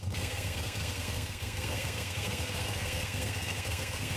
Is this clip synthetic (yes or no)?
yes